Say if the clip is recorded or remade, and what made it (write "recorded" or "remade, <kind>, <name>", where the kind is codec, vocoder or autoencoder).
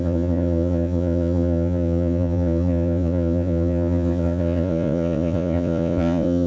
remade, vocoder, Vocos